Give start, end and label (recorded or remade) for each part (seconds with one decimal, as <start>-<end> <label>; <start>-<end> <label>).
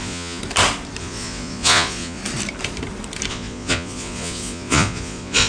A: 0.0-0.4 remade; 0.4-1.0 recorded; 1.0-2.2 remade; 2.2-3.3 recorded; 3.3-5.5 remade